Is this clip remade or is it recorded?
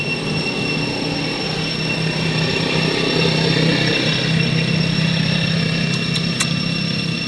recorded